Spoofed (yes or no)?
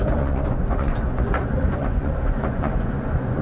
yes